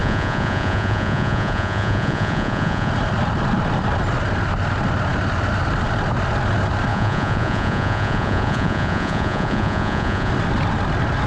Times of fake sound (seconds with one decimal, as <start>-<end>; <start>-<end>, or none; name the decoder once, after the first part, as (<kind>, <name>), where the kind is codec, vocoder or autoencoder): 0.0-2.9 (vocoder, Vocos); 6.9-10.3